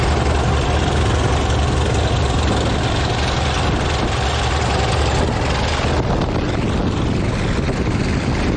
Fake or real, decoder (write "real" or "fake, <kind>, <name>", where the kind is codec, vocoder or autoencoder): real